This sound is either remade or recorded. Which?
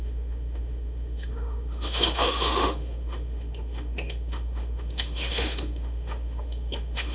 remade